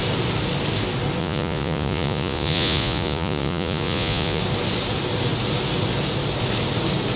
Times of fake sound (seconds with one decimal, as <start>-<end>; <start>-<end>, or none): 1.2-4.4

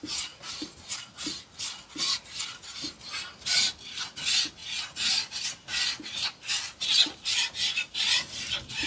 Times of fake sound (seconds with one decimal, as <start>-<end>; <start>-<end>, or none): none